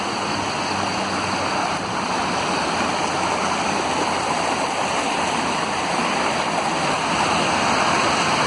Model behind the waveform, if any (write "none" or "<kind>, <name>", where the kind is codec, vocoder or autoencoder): none